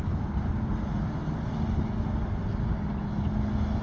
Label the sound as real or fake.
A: real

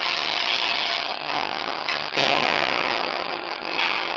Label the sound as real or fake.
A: fake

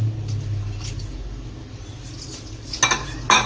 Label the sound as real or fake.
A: real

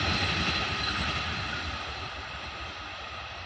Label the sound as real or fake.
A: real